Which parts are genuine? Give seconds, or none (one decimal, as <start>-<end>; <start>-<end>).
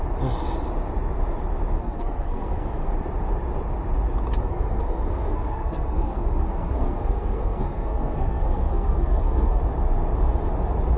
0.0-1.8; 2.9-4.4; 9.6-11.0